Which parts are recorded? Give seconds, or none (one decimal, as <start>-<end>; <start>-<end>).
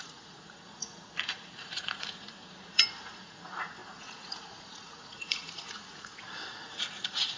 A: none